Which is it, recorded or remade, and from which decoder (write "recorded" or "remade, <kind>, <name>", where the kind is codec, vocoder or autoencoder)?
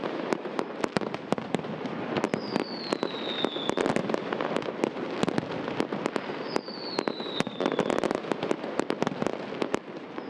recorded